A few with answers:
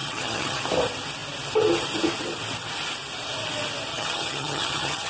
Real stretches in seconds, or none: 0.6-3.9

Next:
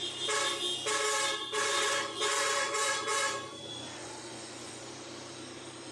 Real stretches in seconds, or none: 0.0-1.4; 4.9-5.9

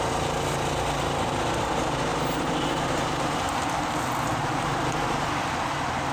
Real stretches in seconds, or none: 0.0-2.1; 3.7-4.3; 4.8-6.1

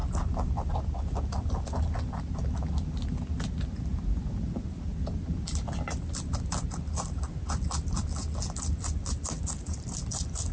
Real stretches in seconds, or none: 0.0-10.5

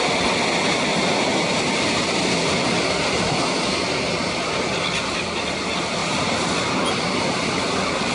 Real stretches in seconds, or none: 0.0-0.9; 2.3-6.0; 7.5-8.1

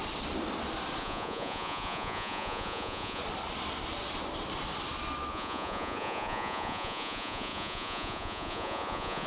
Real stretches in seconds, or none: 0.0-1.0; 3.2-5.3

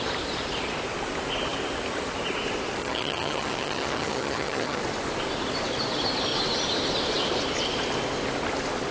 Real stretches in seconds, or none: 0.0-2.8; 4.8-8.9

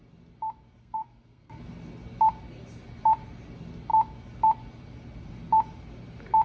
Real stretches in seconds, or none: 0.0-0.8; 1.6-6.4